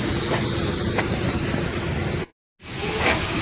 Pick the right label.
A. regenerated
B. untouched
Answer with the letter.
B